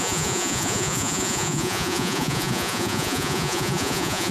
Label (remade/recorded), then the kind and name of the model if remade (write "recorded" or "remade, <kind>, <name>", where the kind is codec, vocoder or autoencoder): remade, vocoder, Vocos